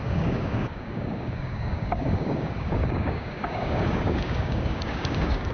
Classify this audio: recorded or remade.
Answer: remade